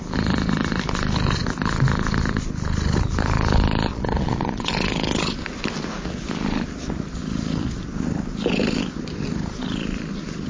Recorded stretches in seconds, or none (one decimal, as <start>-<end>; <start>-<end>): 0.0-3.9; 4.7-10.5